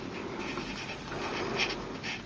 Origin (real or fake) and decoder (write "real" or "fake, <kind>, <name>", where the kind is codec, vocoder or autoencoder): real